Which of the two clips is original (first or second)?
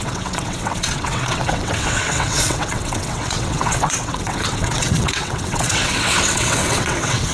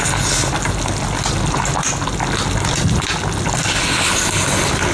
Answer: second